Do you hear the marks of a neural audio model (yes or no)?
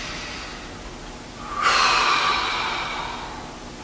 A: no